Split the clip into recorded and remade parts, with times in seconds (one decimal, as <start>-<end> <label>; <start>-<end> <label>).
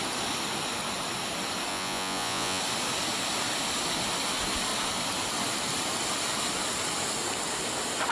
0.0-1.7 recorded; 1.7-2.6 remade; 2.6-8.1 recorded